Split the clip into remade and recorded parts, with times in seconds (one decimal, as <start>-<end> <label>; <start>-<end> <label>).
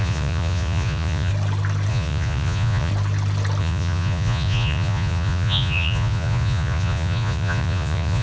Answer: 0.0-1.3 remade; 1.3-1.9 recorded; 1.9-2.9 remade; 2.9-3.6 recorded; 3.6-8.2 remade